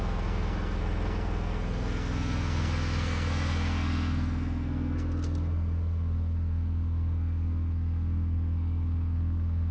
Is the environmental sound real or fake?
fake